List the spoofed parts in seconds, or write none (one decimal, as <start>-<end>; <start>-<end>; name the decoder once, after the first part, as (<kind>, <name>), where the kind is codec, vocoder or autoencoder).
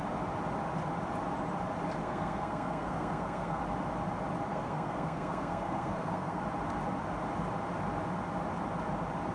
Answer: 2.0-3.6 (codec, SNAC); 4.5-6.4